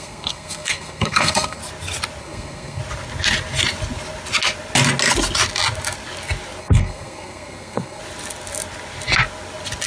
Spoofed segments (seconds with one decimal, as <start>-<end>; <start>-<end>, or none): 0.0-1.6; 2.2-2.8; 6.6-8.0